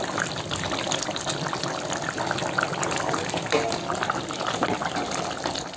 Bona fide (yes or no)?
yes